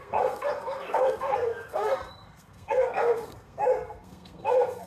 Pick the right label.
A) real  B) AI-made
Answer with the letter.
B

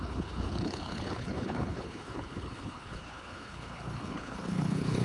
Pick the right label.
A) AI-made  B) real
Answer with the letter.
A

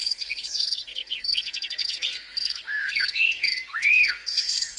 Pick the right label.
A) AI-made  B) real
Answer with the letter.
A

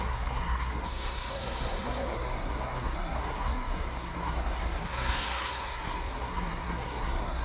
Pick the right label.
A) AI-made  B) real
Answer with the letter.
A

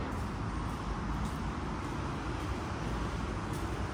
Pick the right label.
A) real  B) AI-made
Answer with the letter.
A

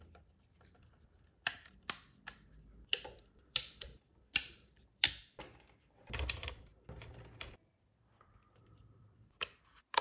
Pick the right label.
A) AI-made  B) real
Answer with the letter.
A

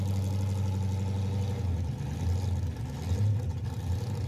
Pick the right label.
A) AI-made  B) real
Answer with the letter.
B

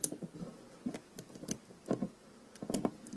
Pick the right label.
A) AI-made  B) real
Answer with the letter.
B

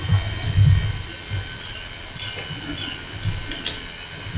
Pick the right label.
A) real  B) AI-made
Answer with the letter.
A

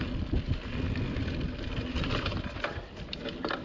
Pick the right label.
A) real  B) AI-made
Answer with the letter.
A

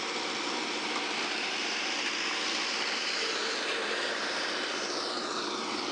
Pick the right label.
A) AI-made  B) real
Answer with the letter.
A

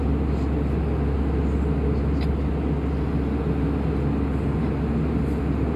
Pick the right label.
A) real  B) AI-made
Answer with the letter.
A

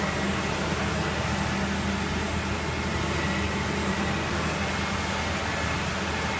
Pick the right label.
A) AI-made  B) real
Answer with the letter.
B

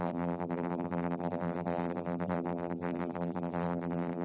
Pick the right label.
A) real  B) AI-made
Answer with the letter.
B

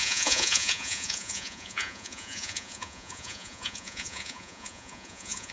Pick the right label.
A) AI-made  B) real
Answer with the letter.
A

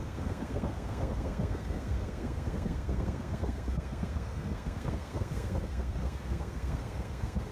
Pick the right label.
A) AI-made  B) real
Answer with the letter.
A